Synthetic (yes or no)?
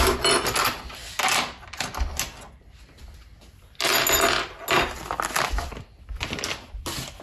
no